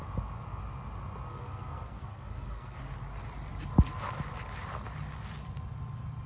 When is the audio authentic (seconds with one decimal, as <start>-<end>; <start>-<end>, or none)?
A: 0.0-1.3; 2.8-6.3